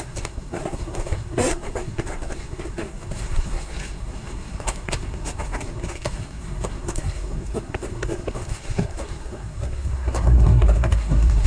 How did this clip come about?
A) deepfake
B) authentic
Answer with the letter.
A